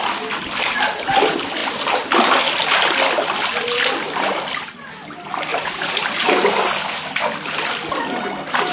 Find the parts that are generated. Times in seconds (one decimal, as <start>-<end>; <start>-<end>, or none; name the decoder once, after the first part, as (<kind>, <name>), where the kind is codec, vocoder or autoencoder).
5.5-6.0 (vocoder, Vocos)